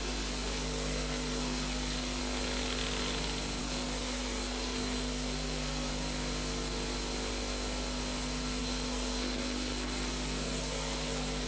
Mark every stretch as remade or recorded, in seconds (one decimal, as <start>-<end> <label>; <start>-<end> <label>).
0.0-2.2 remade; 2.2-3.6 recorded; 3.6-5.9 remade; 5.9-8.6 recorded; 8.6-11.5 remade